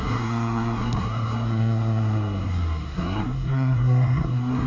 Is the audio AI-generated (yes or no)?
yes